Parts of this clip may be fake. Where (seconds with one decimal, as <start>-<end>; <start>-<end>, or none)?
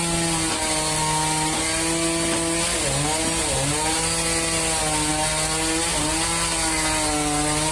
none